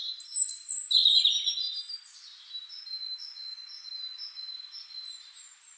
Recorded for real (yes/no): yes